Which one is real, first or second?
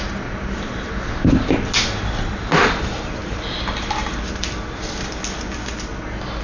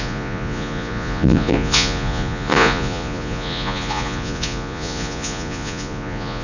first